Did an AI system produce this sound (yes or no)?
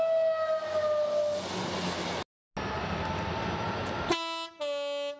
no